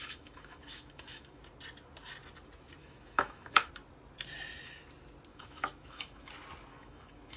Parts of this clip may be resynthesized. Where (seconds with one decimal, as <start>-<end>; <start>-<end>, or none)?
0.0-1.4; 2.8-3.7; 5.3-6.3; 6.7-7.4